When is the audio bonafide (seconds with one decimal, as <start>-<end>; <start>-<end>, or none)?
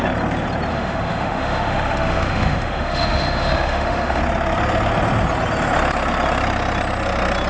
0.0-0.7; 4.2-7.5